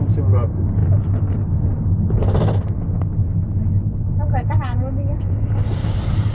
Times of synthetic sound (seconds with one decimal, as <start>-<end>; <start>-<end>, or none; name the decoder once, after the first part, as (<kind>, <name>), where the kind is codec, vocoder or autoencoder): none